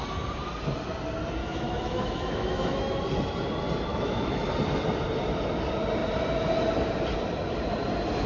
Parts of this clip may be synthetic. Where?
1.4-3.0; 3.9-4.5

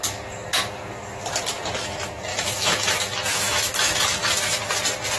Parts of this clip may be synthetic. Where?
2.3-4.6

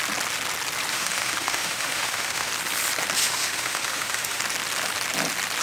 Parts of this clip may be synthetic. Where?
0.9-2.5; 3.2-4.4